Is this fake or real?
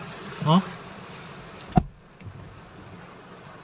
real